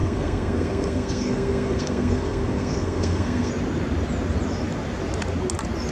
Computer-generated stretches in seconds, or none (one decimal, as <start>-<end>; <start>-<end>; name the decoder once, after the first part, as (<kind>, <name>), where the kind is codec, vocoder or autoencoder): 0.0-3.5 (codec, SNAC)